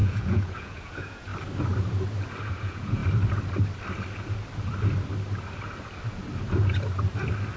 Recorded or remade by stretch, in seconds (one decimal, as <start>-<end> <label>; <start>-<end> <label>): 0.0-1.3 remade; 1.3-2.4 recorded; 2.4-3.0 remade; 3.0-7.6 recorded